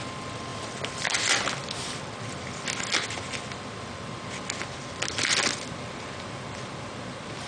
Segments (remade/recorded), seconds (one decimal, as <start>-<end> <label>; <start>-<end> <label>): 0.0-7.5 recorded